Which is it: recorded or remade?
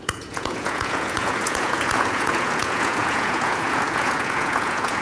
remade